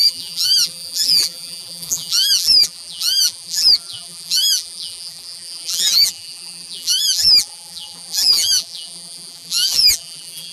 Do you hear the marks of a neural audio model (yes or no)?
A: yes